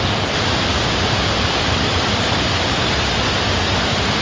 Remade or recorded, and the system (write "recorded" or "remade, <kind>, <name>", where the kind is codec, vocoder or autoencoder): recorded